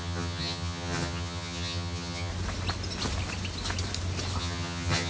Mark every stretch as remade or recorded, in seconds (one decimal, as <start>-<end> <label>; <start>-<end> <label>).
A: 0.0-2.3 remade; 2.3-4.4 recorded; 4.4-5.1 remade